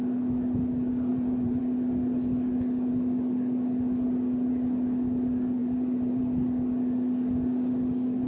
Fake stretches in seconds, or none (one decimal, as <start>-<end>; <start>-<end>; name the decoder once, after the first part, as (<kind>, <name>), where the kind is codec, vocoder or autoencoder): 1.1-1.6 (vocoder, BigVGAN v2); 5.6-6.2